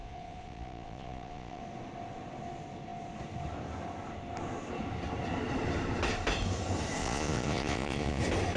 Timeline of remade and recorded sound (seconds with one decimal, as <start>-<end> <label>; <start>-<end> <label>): 0.0-1.6 remade; 1.6-7.0 recorded; 7.0-8.2 remade; 8.2-8.6 recorded